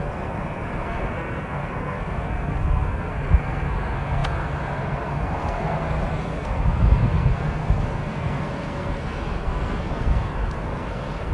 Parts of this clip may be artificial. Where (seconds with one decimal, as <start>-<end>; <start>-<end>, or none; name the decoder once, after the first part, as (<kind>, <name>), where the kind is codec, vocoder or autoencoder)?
0.0-11.3 (codec, SNAC)